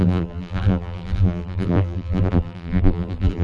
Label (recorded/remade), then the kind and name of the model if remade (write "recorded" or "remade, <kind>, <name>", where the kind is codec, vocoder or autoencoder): remade, vocoder, BigVGAN v2